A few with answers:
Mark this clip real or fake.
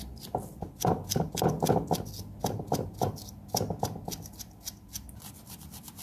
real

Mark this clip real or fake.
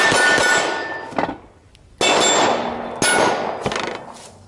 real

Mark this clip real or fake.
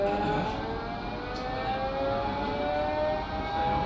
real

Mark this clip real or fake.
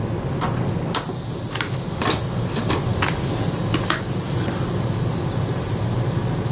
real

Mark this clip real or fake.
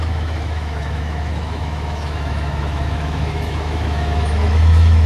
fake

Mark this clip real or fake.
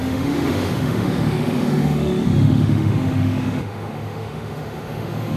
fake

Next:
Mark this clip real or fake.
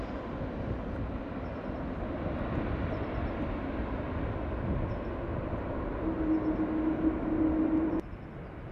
real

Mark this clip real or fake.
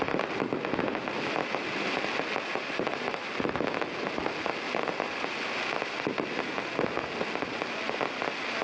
real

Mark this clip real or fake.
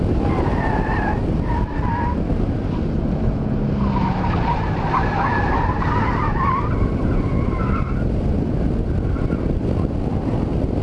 real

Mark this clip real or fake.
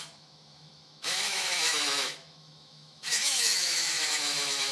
fake